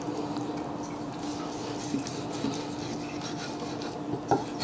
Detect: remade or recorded recorded